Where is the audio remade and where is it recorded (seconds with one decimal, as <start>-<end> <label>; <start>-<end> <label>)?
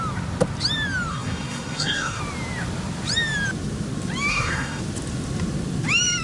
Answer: 0.0-1.1 recorded; 1.1-2.2 remade; 2.2-4.3 recorded; 4.3-4.8 remade; 4.8-6.2 recorded